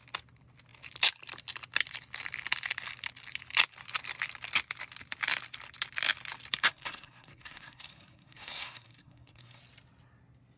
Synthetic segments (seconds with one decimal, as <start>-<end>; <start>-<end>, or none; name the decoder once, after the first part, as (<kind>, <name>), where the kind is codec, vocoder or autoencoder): 6.6-9.6 (codec, SNAC)

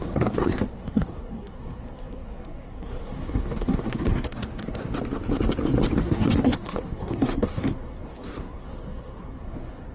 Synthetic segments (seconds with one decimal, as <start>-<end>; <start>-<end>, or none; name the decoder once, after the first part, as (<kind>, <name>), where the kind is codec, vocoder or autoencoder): 0.0-4.9 (codec, SNAC); 6.0-9.9

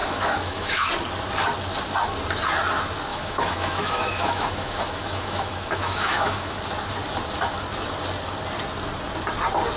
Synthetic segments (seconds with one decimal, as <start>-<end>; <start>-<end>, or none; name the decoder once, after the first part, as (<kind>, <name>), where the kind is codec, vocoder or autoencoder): 0.0-0.9 (autoencoder, DAC-VAE); 3.1-6.6

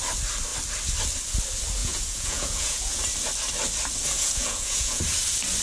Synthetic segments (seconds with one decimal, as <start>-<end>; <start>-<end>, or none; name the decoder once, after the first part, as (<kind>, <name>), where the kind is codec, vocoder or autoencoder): 1.8-3.0 (vocoder, Vocos); 4.1-5.0

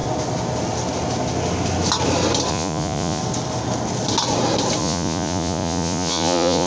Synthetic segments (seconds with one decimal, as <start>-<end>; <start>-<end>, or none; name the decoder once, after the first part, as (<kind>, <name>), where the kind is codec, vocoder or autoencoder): 2.5-3.2 (vocoder, Vocos); 4.8-6.7

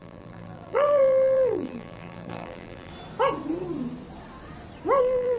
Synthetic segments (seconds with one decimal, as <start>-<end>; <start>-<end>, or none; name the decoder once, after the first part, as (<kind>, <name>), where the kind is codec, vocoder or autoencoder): 0.0-2.9 (vocoder, BigVGAN v2); 5.0-5.4

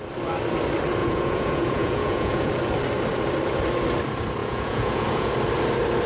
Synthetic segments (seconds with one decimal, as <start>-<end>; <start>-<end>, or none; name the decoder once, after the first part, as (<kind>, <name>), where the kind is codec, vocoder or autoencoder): 1.0-2.5 (vocoder, Vocos); 4.4-5.3